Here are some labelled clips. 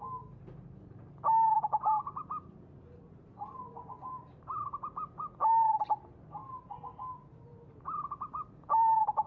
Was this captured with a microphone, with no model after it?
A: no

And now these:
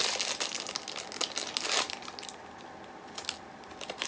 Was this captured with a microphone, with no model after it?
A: yes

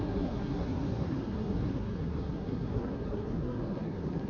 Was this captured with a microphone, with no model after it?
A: no